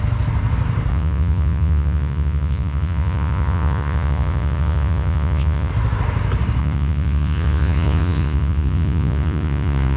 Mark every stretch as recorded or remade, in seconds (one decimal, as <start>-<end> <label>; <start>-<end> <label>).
0.0-0.9 recorded; 0.9-5.7 remade; 5.7-6.6 recorded; 6.6-10.0 remade